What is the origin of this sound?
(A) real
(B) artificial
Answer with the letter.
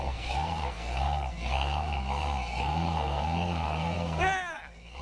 B